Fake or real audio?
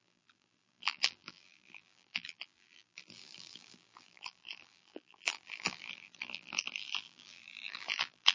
fake